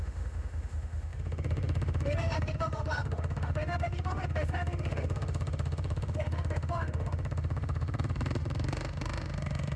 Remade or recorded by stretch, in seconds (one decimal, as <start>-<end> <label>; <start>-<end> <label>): 0.0-9.8 remade